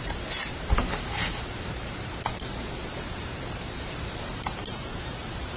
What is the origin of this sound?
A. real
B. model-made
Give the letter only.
B